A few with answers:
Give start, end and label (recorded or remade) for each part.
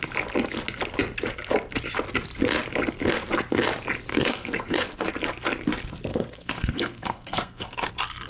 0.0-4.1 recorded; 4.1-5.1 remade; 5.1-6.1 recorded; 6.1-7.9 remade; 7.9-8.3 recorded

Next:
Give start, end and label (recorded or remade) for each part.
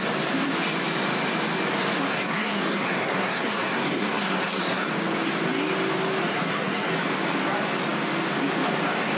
0.0-2.1 recorded; 2.1-4.9 remade; 4.9-6.3 recorded; 6.3-6.9 remade; 6.9-9.2 recorded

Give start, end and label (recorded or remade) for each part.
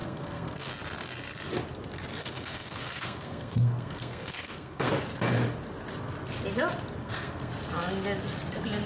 0.0-0.7 remade; 0.7-2.2 recorded; 2.2-4.9 remade; 4.9-7.0 recorded; 7.0-7.5 remade; 7.5-8.9 recorded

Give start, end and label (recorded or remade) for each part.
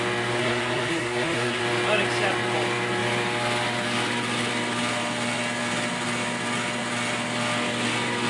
0.0-0.4 recorded; 0.4-1.6 remade; 1.6-8.3 recorded